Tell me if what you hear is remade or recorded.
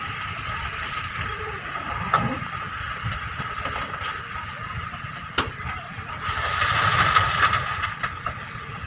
recorded